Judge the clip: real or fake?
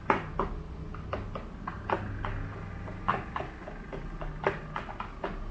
real